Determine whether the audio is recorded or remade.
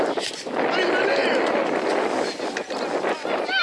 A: recorded